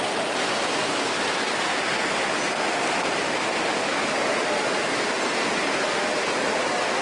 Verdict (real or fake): real